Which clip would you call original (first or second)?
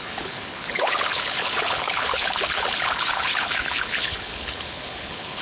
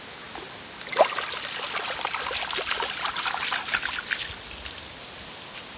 second